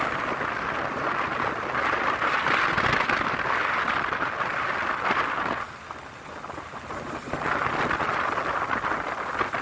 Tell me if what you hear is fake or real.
real